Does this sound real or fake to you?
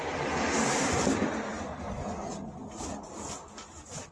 real